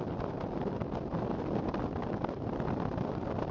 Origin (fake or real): real